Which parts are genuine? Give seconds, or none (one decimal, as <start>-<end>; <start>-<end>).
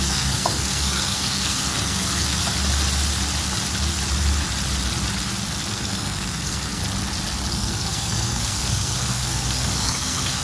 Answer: 2.4-5.7; 6.8-7.5